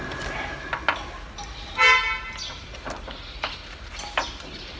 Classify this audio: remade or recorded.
recorded